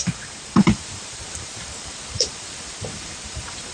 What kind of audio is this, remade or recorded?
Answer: remade